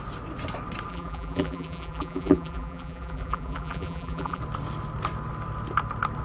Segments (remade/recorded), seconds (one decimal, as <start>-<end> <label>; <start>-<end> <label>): 0.0-0.9 recorded; 0.9-4.4 remade; 4.4-6.2 recorded